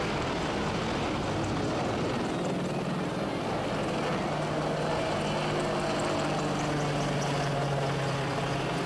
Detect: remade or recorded recorded